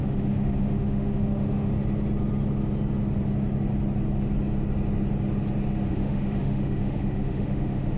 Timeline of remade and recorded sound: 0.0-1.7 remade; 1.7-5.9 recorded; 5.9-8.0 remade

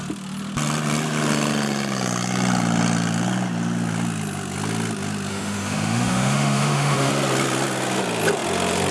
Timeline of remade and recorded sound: 0.0-5.3 recorded; 5.3-7.1 remade; 7.1-8.9 recorded

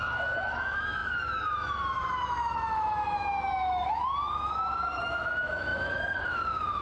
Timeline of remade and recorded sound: 0.0-6.8 remade

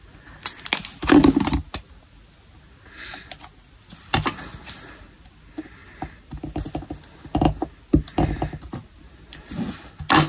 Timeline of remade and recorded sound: 0.0-10.3 recorded